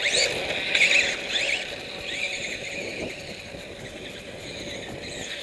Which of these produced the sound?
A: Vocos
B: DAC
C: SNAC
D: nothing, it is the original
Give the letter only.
D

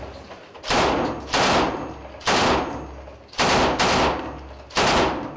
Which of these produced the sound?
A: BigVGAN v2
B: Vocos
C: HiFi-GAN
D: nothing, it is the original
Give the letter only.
D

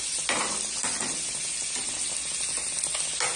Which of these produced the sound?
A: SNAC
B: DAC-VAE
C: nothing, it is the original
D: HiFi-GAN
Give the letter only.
C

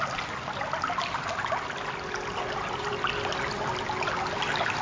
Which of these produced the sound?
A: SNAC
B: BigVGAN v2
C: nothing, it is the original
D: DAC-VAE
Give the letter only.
C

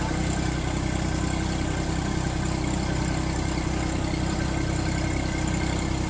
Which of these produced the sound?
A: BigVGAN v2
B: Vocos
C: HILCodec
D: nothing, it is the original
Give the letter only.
D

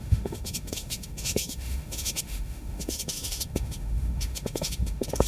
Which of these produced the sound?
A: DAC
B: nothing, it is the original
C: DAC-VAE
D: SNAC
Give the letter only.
C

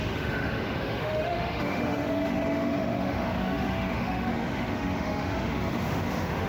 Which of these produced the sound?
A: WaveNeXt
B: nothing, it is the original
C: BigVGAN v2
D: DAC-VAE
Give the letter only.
D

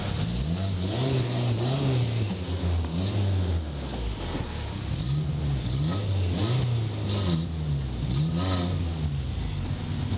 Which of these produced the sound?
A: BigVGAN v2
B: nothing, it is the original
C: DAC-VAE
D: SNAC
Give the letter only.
B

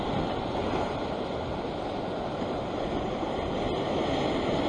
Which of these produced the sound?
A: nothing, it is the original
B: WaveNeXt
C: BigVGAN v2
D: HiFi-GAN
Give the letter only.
A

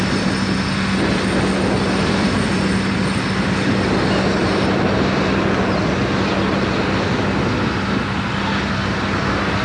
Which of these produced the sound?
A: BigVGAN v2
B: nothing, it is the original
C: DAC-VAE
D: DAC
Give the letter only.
B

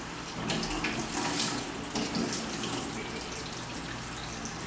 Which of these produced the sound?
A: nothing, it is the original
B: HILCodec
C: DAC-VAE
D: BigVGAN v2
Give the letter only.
A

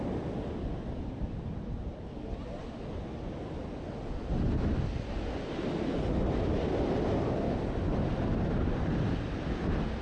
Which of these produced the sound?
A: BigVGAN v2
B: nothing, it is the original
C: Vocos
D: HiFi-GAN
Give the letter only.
B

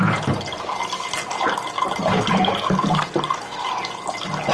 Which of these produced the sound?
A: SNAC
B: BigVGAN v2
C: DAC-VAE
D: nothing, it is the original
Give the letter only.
D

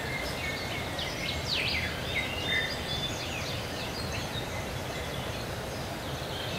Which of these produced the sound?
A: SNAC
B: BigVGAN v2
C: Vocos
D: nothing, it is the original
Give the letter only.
B